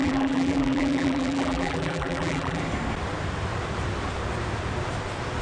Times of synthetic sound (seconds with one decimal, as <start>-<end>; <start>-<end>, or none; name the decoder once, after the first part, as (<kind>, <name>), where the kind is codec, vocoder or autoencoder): 0.0-2.6 (vocoder, BigVGAN v2)